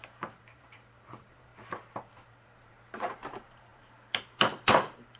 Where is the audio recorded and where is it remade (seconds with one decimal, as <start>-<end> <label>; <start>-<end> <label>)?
0.0-1.5 remade; 1.5-2.1 recorded; 2.1-5.2 remade